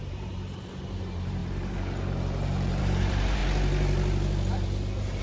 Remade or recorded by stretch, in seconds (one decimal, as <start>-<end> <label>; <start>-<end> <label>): 0.0-3.4 remade; 3.4-5.2 recorded